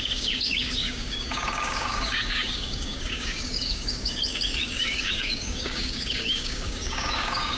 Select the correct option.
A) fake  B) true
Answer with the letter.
A